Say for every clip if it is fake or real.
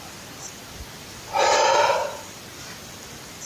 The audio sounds real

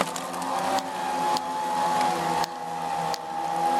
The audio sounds real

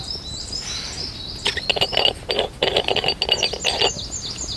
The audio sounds real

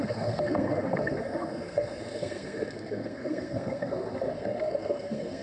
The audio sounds fake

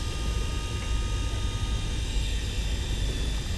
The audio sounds real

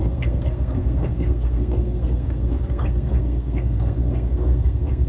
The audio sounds fake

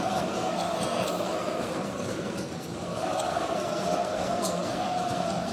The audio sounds fake